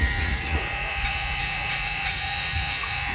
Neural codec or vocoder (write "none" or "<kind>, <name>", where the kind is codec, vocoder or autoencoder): vocoder, Vocos